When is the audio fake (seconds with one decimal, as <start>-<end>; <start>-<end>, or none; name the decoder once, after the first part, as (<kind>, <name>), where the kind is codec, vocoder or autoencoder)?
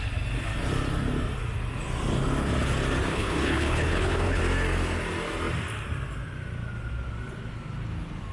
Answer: 3.1-4.4 (codec, HILCodec)